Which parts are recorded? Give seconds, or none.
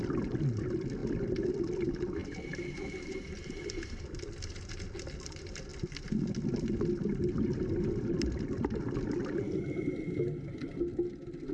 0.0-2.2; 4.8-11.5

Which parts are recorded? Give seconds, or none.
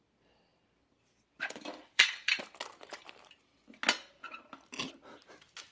0.0-0.5; 2.4-5.7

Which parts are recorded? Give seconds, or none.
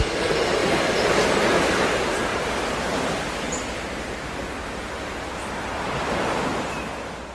0.0-0.6; 1.2-2.3; 3.8-4.6; 5.9-7.3